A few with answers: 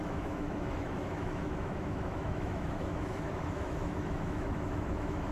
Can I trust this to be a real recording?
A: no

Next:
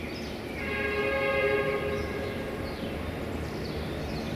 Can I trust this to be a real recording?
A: yes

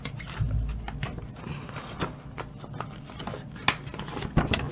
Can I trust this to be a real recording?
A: yes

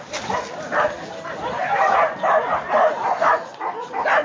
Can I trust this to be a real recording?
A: yes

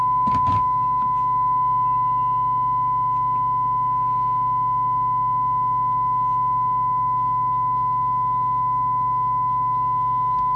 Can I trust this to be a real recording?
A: yes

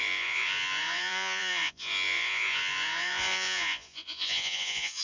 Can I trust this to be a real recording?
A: no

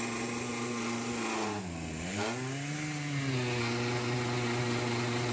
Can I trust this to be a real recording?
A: yes